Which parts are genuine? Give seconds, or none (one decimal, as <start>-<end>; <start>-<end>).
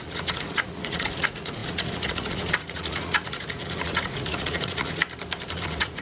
5.0-5.5